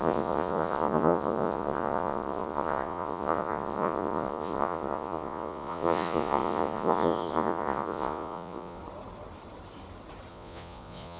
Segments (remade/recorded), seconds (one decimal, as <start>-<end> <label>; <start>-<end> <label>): 0.0-8.8 remade; 8.8-10.3 recorded; 10.3-11.2 remade